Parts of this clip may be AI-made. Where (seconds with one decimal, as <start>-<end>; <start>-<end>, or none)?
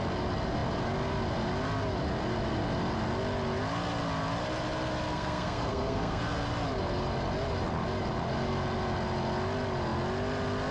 5.1-6.2